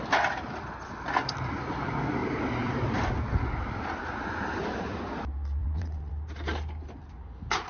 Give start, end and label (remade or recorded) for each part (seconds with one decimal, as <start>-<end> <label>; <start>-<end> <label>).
0.0-5.6 recorded; 5.6-6.1 remade; 6.1-7.7 recorded